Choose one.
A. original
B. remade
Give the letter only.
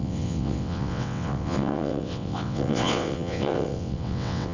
B